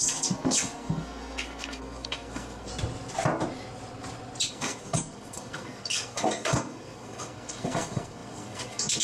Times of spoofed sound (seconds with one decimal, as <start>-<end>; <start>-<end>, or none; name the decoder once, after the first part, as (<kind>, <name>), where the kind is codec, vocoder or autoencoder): 0.0-2.7 (codec, SNAC); 4.5-9.0